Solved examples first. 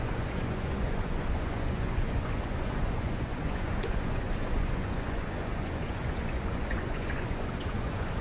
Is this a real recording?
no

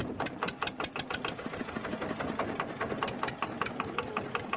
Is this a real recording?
yes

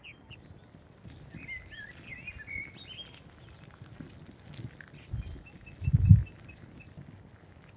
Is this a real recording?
yes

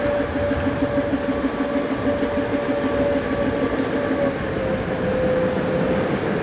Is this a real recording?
yes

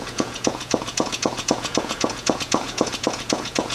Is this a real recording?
no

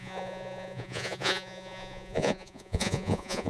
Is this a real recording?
no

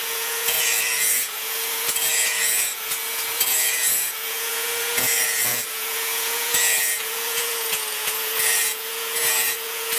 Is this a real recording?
no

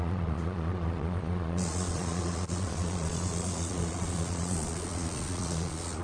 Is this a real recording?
no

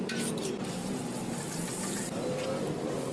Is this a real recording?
yes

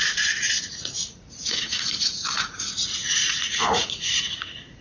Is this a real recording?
no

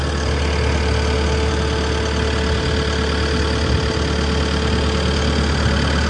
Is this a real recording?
yes